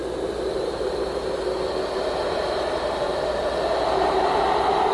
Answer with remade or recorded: recorded